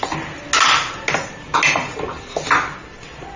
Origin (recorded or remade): recorded